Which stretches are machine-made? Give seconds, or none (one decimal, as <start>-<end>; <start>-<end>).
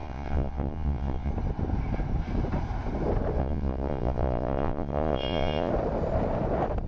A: 0.0-1.3; 3.4-5.7